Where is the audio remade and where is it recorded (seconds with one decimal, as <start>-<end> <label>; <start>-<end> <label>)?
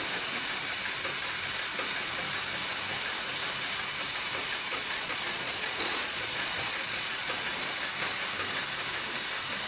0.0-4.7 recorded; 4.7-7.3 remade; 7.3-9.7 recorded